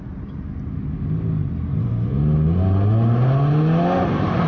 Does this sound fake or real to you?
real